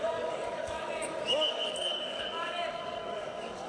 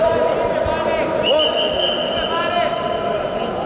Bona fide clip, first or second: second